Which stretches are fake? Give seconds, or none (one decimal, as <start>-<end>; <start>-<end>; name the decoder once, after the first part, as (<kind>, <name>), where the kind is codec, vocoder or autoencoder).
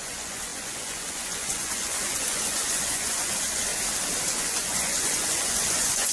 0.0-3.7 (vocoder, Vocos); 4.3-6.1